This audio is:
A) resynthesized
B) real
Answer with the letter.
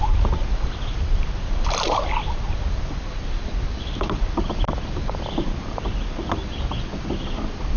B